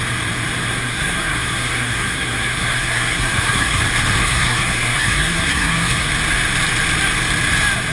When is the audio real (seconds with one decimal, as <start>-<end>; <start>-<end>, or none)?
0.0-0.7; 3.8-4.2; 6.1-7.9